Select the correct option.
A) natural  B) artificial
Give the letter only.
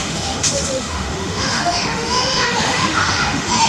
B